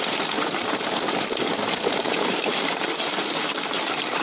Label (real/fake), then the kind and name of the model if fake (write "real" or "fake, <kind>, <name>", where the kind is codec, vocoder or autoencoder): fake, vocoder, BigVGAN v2